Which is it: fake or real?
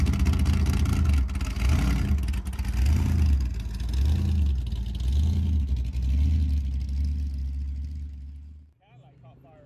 real